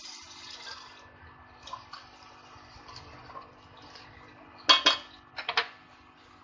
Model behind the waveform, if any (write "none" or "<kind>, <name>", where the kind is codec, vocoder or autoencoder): none